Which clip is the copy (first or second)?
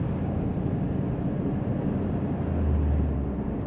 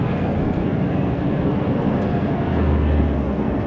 second